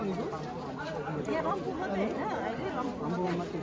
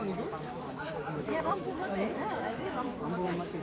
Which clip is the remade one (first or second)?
second